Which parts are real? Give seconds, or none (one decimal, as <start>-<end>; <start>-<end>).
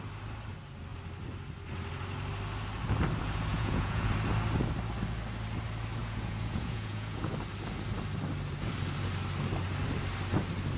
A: 0.0-3.5; 4.1-6.0; 7.3-10.8